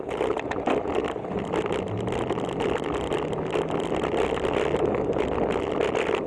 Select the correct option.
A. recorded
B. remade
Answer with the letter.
A